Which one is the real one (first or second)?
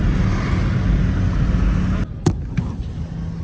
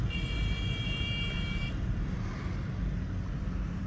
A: first